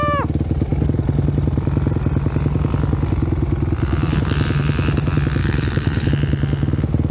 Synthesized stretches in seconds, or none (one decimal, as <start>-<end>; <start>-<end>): 5.4-6.1